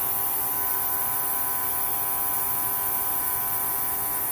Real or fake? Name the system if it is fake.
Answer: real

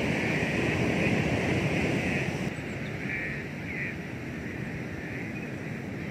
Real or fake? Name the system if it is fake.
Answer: real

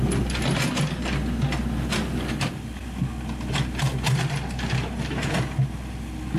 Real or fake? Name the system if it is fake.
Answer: real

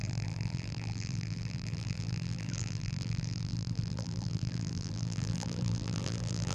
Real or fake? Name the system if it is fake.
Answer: fake, vocoder, BigVGAN v2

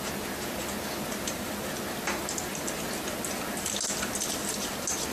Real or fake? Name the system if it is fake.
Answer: real